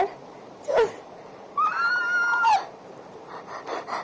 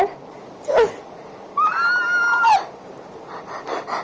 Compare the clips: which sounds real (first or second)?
second